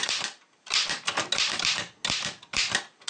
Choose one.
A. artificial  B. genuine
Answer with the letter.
B